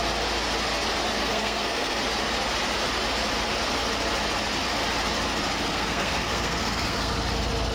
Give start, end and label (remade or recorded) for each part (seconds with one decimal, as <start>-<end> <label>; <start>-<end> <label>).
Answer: 0.0-1.2 recorded; 1.2-2.0 remade; 2.0-5.7 recorded; 5.7-7.1 remade; 7.1-7.7 recorded